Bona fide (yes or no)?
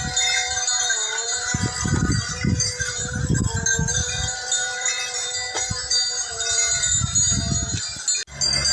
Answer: yes